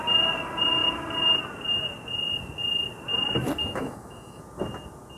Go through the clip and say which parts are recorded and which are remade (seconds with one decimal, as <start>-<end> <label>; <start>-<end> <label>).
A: 0.0-3.6 recorded; 3.6-4.4 remade; 4.4-5.2 recorded